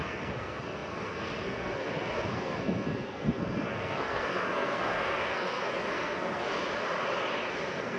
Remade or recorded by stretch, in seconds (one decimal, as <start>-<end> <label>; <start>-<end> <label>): 0.0-6.6 remade; 6.6-7.5 recorded; 7.5-8.0 remade